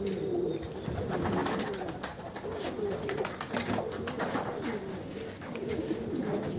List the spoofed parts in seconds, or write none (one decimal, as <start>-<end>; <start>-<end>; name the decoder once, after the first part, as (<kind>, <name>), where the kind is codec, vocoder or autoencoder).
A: 4.9-6.1 (codec, DAC)